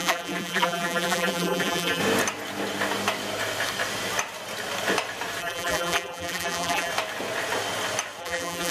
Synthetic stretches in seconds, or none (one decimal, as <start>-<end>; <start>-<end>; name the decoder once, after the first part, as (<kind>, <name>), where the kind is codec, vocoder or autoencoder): 0.0-2.0 (vocoder, BigVGAN v2); 5.4-6.9; 8.2-8.7